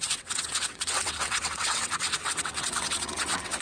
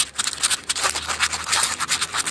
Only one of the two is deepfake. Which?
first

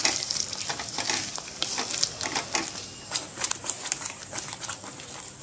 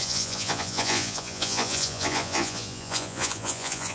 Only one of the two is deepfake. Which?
second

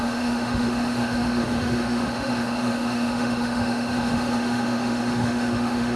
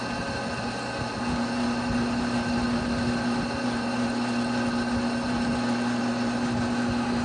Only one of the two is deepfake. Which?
first